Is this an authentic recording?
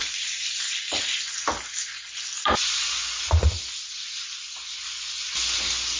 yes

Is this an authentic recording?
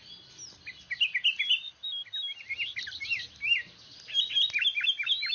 yes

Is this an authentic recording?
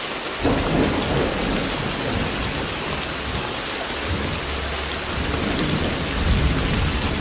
yes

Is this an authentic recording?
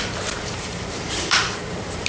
no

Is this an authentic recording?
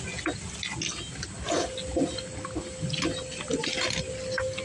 yes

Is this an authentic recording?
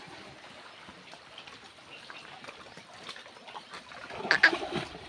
yes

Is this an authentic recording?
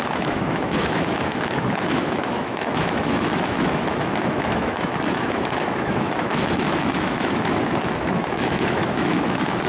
no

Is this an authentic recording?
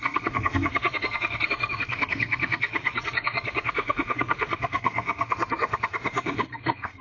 no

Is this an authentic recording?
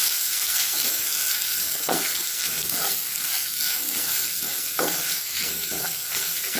no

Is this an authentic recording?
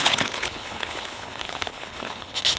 no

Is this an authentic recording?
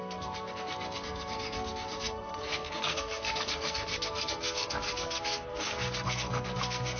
no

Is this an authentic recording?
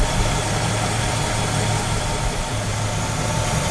yes